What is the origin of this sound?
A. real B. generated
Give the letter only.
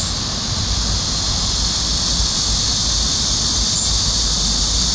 A